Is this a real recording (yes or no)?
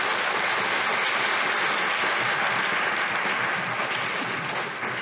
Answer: yes